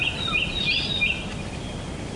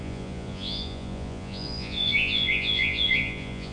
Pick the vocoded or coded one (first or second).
second